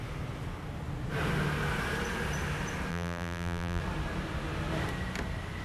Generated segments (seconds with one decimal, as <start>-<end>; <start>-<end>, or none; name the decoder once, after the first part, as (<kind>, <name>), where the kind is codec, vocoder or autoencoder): 2.9-3.8 (vocoder, BigVGAN v2)